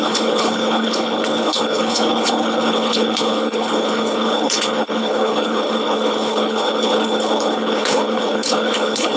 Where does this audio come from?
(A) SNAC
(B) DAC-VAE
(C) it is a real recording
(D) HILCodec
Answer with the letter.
D